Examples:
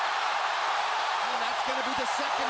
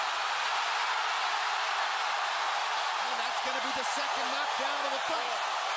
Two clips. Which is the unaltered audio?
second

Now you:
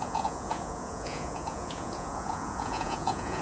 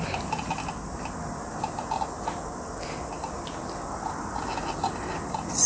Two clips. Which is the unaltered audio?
second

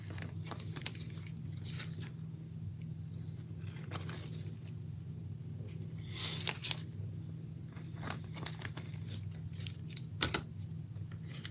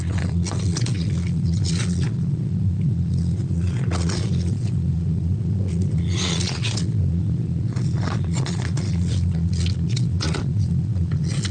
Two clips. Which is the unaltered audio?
first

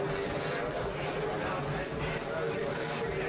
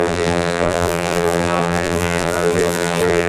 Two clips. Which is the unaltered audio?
first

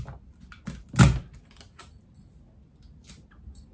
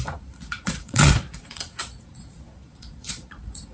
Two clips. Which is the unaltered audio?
first